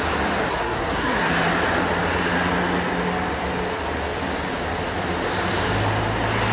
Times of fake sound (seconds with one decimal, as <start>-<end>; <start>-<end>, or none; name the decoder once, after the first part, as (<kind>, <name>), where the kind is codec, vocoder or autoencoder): 0.5-1.3 (codec, SNAC)